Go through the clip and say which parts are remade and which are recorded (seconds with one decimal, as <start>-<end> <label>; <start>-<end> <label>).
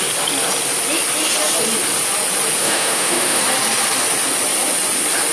0.0-2.6 recorded; 2.6-3.4 remade; 3.4-5.3 recorded